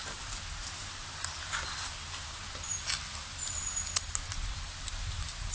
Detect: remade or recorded recorded